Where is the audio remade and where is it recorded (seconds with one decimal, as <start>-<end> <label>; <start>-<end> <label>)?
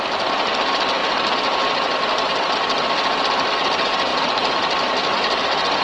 0.0-5.8 recorded